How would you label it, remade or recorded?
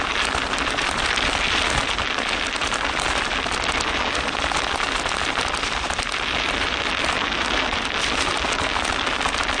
recorded